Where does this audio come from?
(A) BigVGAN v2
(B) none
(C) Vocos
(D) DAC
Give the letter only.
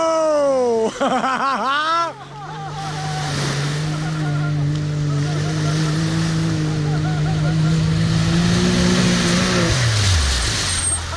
B